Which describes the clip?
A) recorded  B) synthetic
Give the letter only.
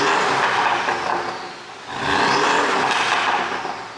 A